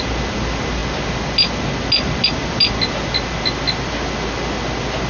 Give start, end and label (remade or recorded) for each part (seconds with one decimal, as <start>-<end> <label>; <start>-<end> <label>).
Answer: 0.0-5.1 recorded